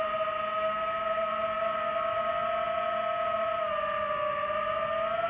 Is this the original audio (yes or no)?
yes